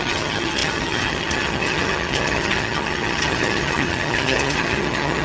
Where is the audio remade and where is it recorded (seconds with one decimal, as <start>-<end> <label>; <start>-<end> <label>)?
0.0-5.2 remade